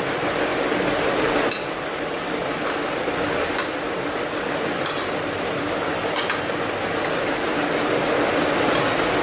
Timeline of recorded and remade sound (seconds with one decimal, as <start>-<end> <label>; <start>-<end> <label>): 0.0-9.2 recorded